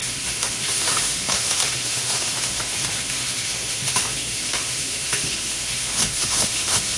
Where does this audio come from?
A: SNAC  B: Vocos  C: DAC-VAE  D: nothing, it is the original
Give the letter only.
C